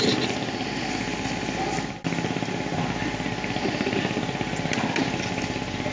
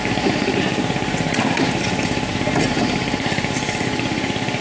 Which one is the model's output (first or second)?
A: second